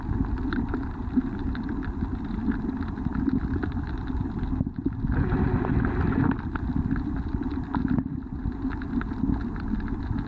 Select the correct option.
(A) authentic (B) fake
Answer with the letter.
A